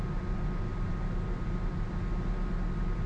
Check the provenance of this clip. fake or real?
real